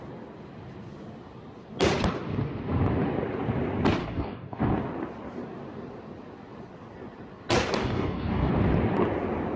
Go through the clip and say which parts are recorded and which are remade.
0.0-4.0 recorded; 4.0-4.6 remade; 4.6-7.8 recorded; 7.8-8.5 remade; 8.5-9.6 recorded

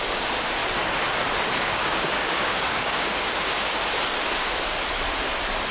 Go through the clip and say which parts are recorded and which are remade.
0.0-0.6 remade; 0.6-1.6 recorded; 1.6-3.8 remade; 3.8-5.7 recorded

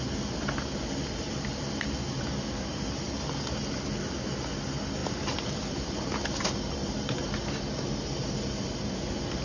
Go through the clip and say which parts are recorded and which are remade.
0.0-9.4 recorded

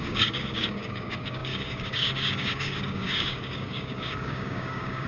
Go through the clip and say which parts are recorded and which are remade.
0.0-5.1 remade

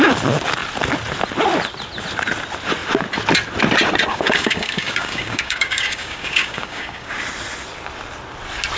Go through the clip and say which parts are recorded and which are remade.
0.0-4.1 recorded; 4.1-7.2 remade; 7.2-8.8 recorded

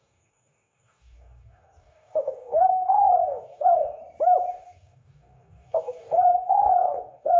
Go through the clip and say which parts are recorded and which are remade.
0.0-4.0 remade; 4.0-4.5 recorded; 4.5-7.4 remade